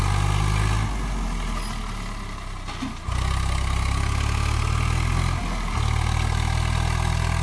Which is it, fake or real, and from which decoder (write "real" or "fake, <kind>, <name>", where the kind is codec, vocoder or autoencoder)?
real